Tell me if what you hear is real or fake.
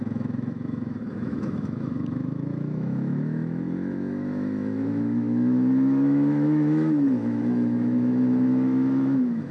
fake